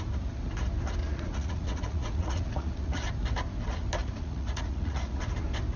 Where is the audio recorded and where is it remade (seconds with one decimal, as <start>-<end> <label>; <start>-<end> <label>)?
0.0-1.0 recorded; 1.0-3.1 remade; 3.1-4.0 recorded; 4.0-5.2 remade; 5.2-5.8 recorded